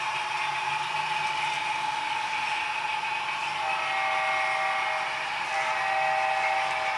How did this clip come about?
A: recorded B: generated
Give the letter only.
A